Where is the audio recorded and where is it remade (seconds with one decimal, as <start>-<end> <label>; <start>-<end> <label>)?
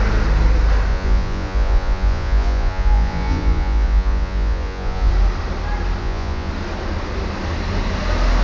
0.0-0.9 recorded; 0.9-5.1 remade; 5.1-6.0 recorded; 6.0-6.5 remade; 6.5-8.4 recorded